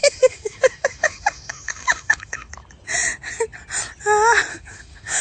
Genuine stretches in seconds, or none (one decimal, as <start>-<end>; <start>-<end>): 2.5-4.5